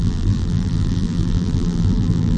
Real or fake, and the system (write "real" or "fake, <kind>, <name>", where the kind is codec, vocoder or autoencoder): fake, vocoder, BigVGAN v2